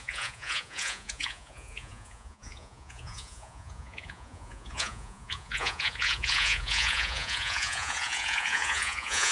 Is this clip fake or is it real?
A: fake